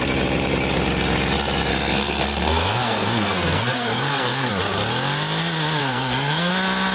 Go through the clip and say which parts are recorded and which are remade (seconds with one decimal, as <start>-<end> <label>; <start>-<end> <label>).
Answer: 0.0-1.7 recorded; 1.7-4.5 remade; 4.5-5.8 recorded; 5.8-6.5 remade; 6.5-6.9 recorded